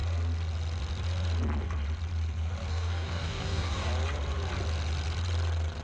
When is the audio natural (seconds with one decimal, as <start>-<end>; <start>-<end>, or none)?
0.0-2.7; 3.9-5.8

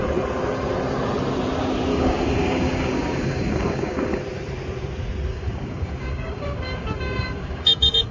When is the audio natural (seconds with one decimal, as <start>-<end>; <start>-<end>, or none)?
0.0-1.9; 4.2-5.3